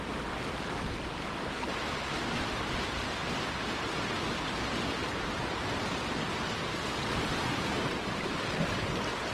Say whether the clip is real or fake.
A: real